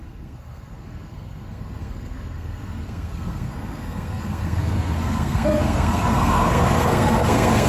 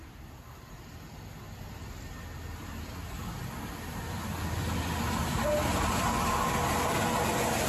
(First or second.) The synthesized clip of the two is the first